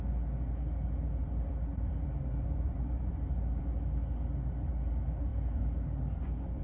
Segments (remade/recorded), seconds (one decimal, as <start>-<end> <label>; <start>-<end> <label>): 0.0-1.2 recorded; 1.2-3.6 remade; 3.6-5.3 recorded; 5.3-6.6 remade